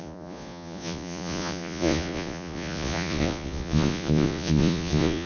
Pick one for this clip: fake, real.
fake